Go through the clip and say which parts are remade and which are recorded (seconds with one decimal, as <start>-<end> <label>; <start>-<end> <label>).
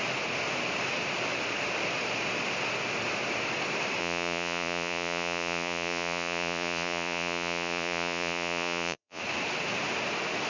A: 0.0-4.0 recorded; 4.0-9.2 remade; 9.2-10.5 recorded